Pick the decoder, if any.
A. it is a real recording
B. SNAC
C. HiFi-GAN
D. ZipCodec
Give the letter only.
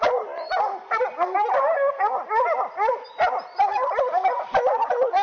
A